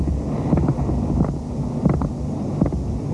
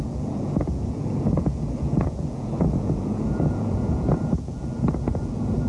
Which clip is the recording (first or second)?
first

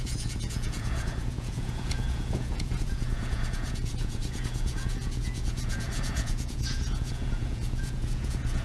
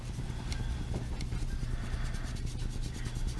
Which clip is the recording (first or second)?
second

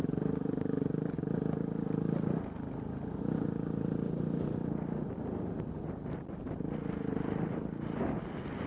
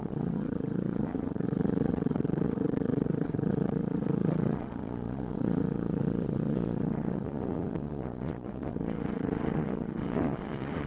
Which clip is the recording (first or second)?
first